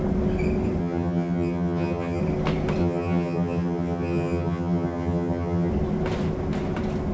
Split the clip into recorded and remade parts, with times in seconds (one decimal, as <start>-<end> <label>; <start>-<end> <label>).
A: 0.0-0.8 recorded; 0.8-2.2 remade; 2.2-2.8 recorded; 2.8-5.7 remade; 5.7-7.1 recorded